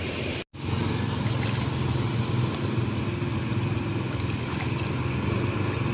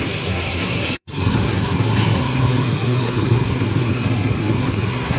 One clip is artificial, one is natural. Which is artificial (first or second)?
second